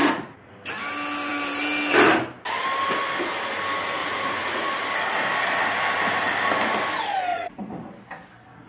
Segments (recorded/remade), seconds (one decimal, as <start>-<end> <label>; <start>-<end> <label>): 0.0-0.5 remade; 0.5-4.0 recorded; 4.0-4.7 remade; 4.7-7.3 recorded; 7.3-7.9 remade; 7.9-8.7 recorded